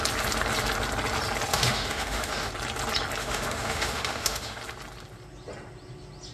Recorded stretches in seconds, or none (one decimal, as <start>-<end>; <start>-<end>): 0.0-1.5; 2.5-3.2; 4.6-6.3